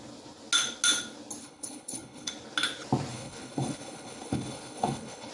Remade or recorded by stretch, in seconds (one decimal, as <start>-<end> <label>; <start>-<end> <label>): 0.0-1.4 recorded; 1.4-2.3 remade; 2.3-3.1 recorded; 3.1-5.3 remade